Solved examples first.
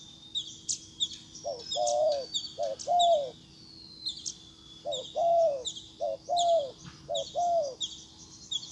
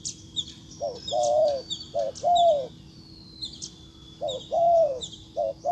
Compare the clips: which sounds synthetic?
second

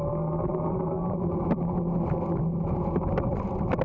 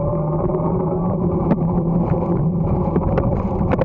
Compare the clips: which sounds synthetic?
second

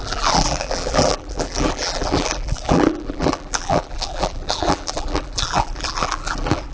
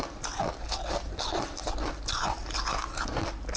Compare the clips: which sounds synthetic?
first